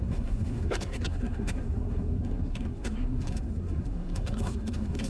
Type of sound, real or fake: fake